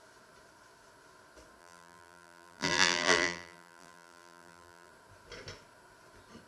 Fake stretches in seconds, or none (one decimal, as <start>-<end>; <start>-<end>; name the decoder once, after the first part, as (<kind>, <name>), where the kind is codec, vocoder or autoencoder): 1.6-4.9 (vocoder, BigVGAN v2)

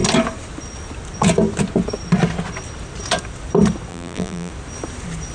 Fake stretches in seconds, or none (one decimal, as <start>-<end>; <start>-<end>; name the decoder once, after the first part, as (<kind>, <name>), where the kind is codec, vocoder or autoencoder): 3.9-4.5 (vocoder, BigVGAN v2)